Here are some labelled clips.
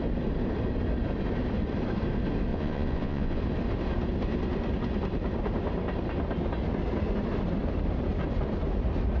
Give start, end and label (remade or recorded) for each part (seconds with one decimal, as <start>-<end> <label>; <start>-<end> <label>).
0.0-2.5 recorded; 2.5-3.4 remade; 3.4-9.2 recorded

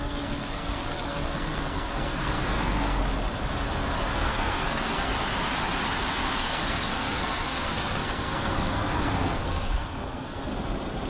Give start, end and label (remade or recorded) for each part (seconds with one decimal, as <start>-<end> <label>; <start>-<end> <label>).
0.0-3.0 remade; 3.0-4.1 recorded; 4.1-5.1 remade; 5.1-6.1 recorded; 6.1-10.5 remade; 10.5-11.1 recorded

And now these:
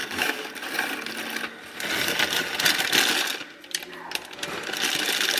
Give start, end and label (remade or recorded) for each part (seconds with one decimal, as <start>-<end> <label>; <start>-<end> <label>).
0.0-0.5 remade; 0.5-5.4 recorded

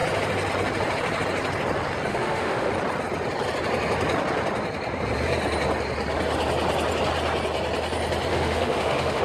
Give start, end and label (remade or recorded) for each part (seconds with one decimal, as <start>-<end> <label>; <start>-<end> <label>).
0.0-2.1 recorded; 2.1-2.7 remade; 2.7-8.3 recorded; 8.3-9.2 remade

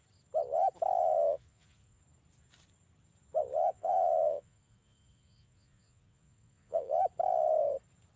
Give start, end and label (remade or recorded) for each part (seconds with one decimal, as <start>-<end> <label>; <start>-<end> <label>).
0.0-1.0 recorded; 1.0-2.0 remade; 2.0-3.6 recorded; 3.6-6.9 remade; 6.9-8.2 recorded

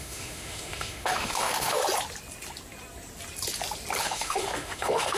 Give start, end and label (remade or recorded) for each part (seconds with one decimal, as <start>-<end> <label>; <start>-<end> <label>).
0.0-1.8 remade; 1.8-4.0 recorded; 4.0-5.2 remade

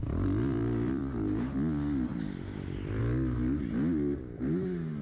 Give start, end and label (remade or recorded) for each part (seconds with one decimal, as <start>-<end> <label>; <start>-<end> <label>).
0.0-1.0 remade; 1.0-5.0 recorded